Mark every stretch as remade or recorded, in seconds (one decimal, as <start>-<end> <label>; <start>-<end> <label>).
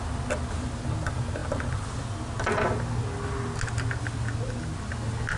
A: 0.0-5.4 recorded